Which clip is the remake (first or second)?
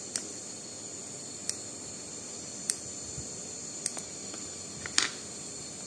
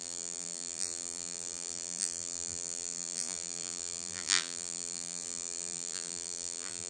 second